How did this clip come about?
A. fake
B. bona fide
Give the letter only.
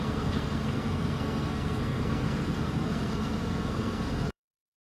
A